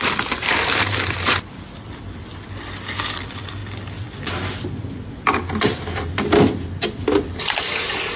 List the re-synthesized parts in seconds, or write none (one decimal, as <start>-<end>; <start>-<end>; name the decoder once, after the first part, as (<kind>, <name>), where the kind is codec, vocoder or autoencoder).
0.0-8.2 (vocoder, BigVGAN v2)